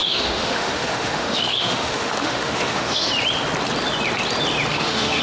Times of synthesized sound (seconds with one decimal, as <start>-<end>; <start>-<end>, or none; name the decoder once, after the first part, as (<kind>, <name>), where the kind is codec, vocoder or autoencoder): 0.0-3.1 (autoencoder, DAC-VAE); 4.7-5.2